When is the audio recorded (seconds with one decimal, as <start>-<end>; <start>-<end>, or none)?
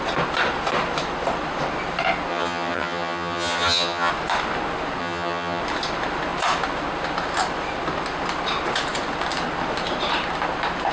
0.0-2.3; 4.1-5.0; 5.6-10.9